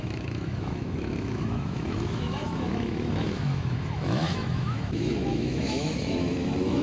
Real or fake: fake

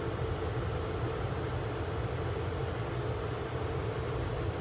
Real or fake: real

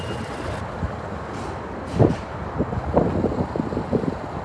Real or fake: real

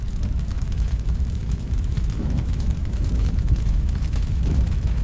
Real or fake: fake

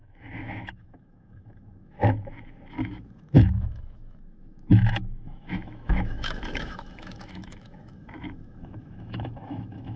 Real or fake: fake